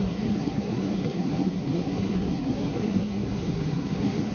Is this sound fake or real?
fake